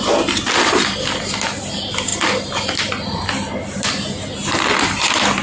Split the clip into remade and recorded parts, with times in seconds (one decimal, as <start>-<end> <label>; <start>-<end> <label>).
0.0-5.4 recorded